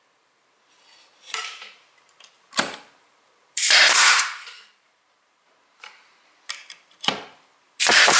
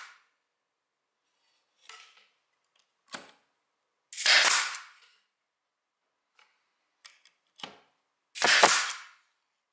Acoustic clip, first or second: second